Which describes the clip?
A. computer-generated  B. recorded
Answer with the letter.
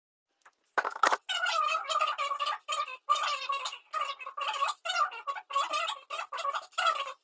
B